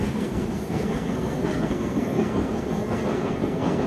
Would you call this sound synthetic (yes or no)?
yes